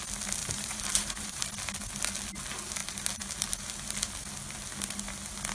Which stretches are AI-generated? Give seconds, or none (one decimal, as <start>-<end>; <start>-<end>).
0.4-1.4